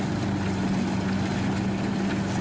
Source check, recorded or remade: recorded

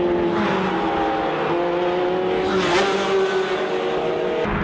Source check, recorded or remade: recorded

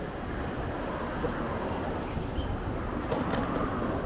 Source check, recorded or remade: remade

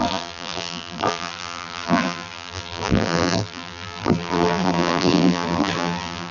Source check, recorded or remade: remade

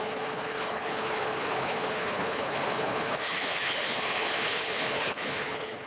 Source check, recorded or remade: remade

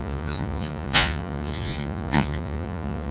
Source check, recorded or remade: remade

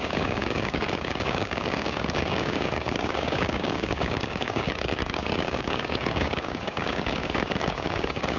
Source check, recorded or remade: remade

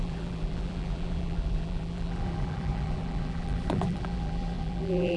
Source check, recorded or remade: remade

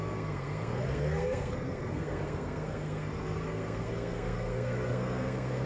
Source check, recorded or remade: remade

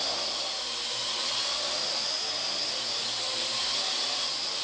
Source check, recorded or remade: recorded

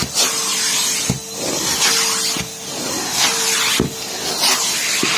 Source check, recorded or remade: recorded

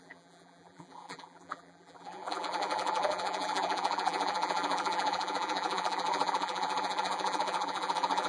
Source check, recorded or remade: remade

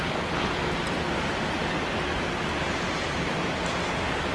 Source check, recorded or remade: recorded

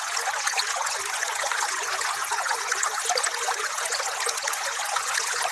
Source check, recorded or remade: remade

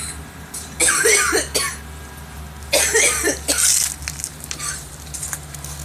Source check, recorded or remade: recorded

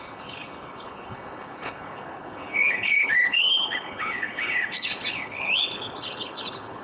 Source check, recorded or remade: remade